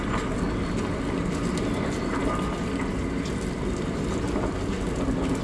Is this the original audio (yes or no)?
yes